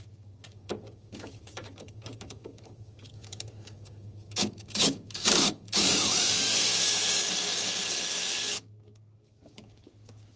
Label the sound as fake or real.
fake